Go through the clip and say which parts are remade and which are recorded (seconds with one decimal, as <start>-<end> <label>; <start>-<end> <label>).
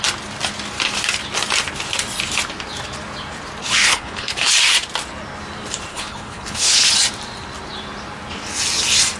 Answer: 0.0-3.6 recorded; 3.6-4.5 remade; 4.5-5.9 recorded; 5.9-6.9 remade; 6.9-9.2 recorded